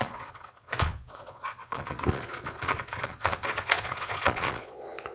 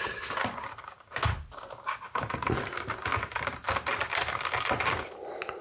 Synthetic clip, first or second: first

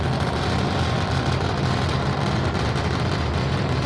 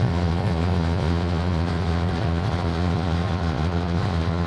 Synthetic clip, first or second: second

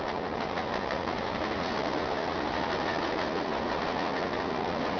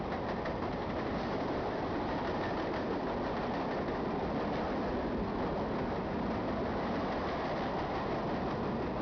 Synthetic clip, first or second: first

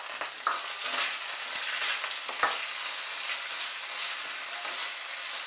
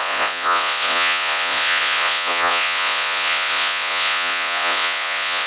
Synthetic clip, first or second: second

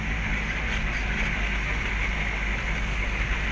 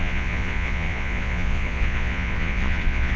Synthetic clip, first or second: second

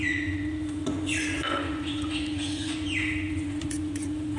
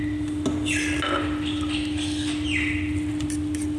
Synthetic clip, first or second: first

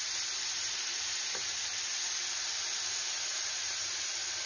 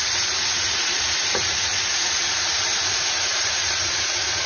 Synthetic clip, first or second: second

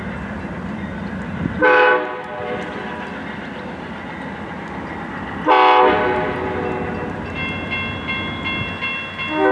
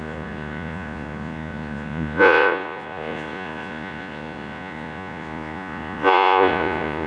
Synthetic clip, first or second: second